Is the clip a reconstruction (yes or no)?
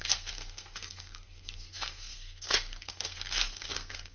yes